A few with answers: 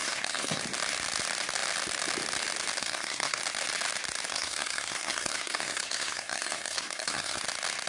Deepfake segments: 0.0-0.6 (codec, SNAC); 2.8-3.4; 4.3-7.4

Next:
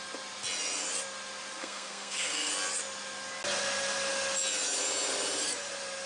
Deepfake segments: 1.6-2.5 (codec, SNAC)

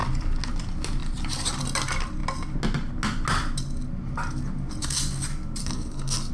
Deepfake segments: 5.6-6.3 (codec, SNAC)

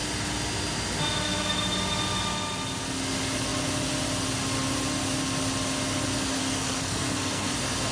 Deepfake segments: 6.4-7.5 (codec, SNAC)

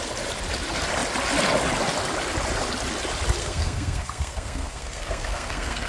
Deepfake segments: 3.4-5.9 (codec, SNAC)

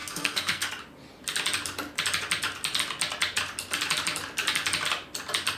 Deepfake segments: 0.0-0.7 (codec, SNAC)